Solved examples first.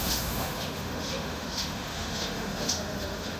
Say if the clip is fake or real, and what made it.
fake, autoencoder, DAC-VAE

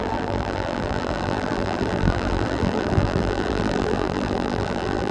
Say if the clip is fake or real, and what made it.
fake, vocoder, BigVGAN v2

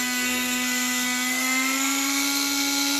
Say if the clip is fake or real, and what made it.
fake, codec, SNAC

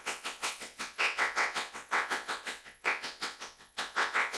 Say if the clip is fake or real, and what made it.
fake, vocoder, WaveNeXt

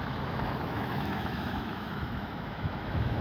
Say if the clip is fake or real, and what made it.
fake, autoencoder, DAC-VAE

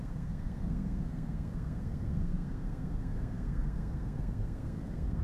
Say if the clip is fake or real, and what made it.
fake, codec, SNAC